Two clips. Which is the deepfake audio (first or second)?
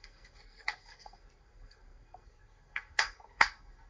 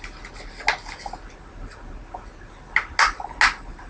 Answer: first